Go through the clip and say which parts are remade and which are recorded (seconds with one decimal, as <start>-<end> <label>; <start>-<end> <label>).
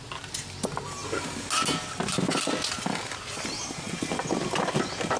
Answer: 0.0-5.2 recorded